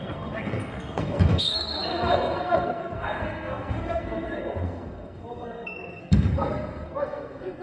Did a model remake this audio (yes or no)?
yes